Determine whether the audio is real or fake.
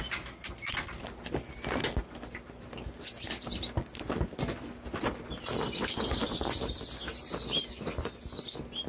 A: real